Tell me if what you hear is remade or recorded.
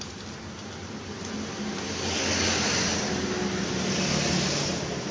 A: recorded